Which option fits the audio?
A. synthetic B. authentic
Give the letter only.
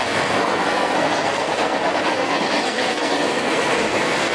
A